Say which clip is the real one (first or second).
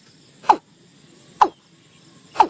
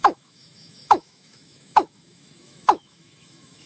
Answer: first